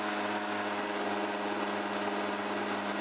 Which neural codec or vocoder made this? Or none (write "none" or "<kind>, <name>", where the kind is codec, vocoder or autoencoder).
none